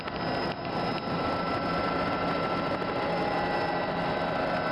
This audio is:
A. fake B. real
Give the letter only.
B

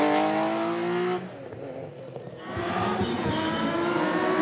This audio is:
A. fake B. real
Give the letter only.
B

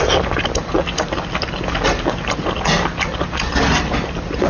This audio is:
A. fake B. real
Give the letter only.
B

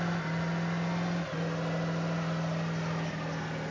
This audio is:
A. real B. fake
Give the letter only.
A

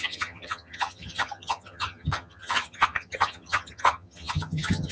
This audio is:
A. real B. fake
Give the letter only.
B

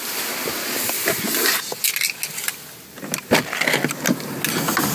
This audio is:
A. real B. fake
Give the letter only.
A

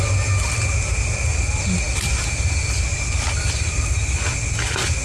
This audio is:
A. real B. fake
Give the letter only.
A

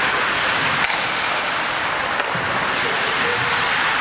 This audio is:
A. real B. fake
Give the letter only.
A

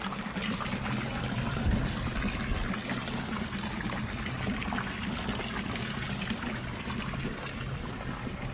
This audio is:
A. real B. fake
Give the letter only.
A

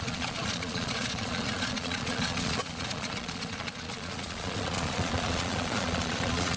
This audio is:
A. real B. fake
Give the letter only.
B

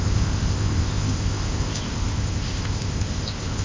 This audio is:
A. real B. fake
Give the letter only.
B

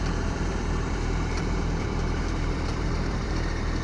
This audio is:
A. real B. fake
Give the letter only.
B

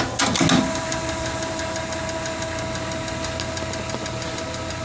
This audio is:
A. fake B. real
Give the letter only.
B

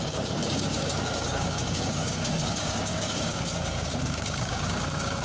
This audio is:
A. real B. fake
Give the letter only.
B